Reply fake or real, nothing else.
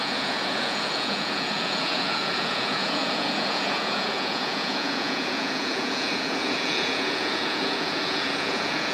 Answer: fake